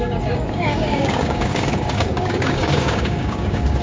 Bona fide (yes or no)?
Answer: no